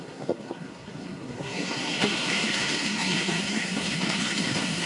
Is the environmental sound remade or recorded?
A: remade